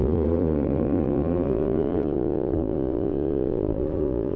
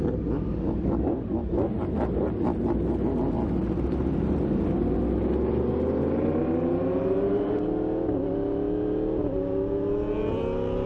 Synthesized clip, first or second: first